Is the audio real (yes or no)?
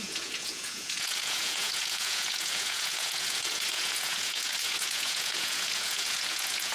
no